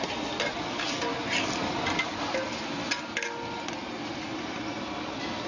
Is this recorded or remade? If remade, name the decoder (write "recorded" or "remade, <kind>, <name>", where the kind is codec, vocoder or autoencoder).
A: recorded